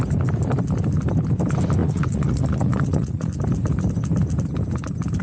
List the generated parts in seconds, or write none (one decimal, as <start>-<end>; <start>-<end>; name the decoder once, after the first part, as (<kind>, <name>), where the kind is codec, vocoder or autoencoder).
1.8-3.3 (vocoder, Vocos)